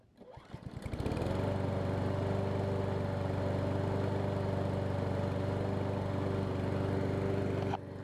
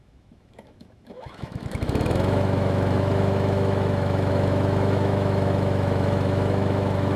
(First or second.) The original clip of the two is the first